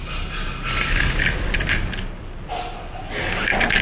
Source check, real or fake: real